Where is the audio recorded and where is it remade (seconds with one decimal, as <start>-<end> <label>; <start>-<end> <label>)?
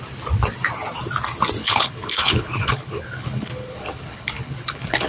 0.0-1.6 recorded; 1.6-5.1 remade